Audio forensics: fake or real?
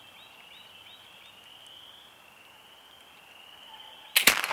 real